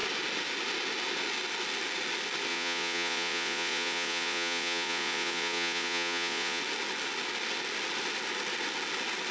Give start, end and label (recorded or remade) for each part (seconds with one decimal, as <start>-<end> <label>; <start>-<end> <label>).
0.0-2.5 recorded; 2.5-6.6 remade; 6.6-9.3 recorded